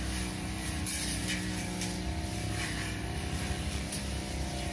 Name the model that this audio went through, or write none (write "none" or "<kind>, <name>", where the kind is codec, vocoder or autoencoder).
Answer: none